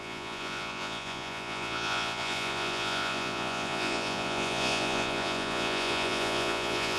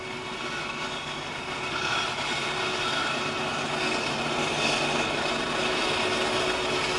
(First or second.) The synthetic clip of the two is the first